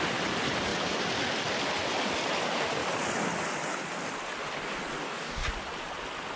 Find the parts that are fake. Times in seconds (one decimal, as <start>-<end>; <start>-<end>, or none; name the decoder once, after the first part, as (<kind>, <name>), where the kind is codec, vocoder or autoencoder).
5.0-5.5 (codec, DAC)